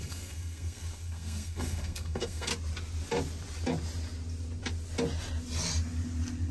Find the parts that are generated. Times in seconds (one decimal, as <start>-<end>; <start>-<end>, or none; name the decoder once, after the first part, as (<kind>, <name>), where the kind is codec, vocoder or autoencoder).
0.0-2.5 (codec, SNAC)